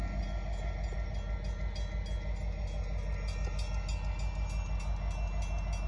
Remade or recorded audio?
recorded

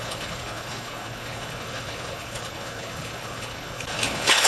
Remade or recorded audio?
remade